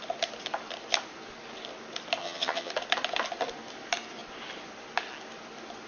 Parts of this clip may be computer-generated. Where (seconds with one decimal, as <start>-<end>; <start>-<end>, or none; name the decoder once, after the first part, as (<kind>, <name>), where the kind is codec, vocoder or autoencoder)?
2.2-2.7 (vocoder, HiFi-GAN)